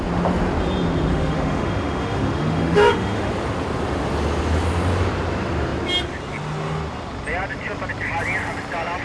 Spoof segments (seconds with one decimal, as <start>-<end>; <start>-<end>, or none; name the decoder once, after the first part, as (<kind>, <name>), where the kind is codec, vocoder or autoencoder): 1.1-3.3 (autoencoder, DAC-VAE)